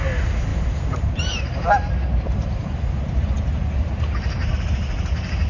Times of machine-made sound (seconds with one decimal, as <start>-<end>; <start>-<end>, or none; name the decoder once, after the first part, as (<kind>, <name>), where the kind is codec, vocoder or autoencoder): 0.5-2.8 (vocoder, BigVGAN v2)